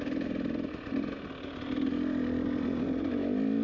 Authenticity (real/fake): real